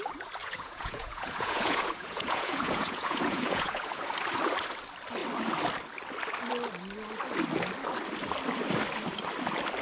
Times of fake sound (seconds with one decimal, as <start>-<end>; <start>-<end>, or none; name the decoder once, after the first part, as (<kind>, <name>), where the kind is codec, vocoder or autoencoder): 0.4-4.0 (vocoder, Vocos)